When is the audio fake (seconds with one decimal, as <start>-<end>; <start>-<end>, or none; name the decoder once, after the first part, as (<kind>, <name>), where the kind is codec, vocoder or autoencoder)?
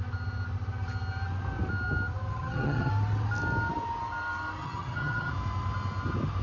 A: 2.3-2.9 (vocoder, HiFi-GAN); 4.6-5.3